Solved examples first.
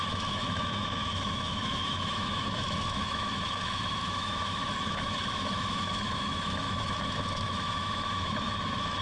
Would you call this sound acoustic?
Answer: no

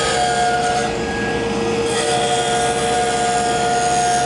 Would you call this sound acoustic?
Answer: yes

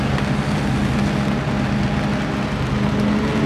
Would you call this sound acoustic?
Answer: yes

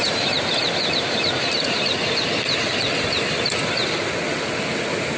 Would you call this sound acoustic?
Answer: yes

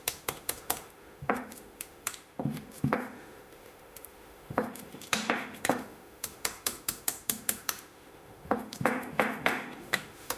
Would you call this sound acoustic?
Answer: no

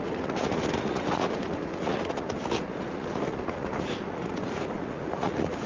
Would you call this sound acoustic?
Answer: no